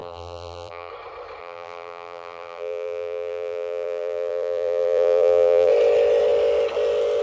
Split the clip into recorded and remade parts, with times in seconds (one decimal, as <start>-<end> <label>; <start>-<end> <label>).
0.0-0.9 remade; 0.9-1.4 recorded; 1.4-5.7 remade; 5.7-7.2 recorded